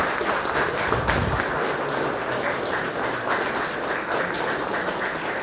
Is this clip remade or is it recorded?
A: recorded